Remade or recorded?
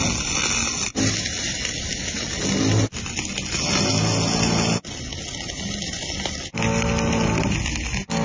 recorded